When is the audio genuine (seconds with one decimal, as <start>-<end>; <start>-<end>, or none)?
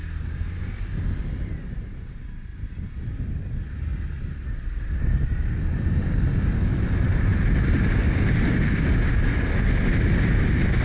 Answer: 0.0-10.8